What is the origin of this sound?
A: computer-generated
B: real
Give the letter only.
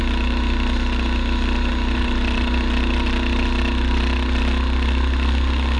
B